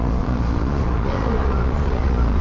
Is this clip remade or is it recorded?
remade